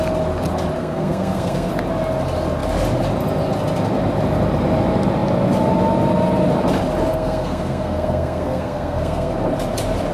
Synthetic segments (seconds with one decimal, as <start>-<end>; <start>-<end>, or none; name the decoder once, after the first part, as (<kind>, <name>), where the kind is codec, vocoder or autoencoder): 0.8-1.7 (codec, SNAC); 7.1-9.3